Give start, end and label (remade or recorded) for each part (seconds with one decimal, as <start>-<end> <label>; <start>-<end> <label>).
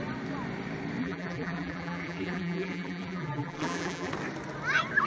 0.0-1.0 recorded; 1.0-4.1 remade; 4.1-5.1 recorded